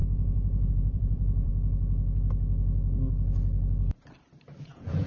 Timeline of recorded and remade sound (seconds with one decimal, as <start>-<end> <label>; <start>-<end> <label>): 0.0-1.5 remade; 1.5-4.6 recorded; 4.6-5.1 remade